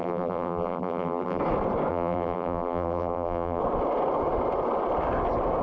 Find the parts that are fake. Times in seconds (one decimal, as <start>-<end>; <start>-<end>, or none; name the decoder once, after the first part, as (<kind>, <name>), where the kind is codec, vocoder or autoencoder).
0.0-1.4 (vocoder, BigVGAN v2); 1.9-3.6